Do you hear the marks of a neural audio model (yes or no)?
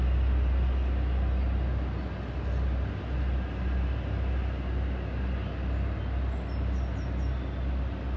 no